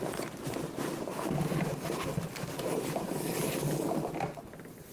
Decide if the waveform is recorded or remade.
recorded